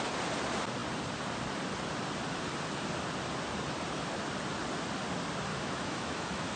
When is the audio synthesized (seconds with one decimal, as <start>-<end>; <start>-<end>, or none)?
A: 5.5-6.6